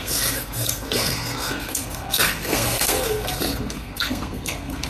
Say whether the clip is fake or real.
fake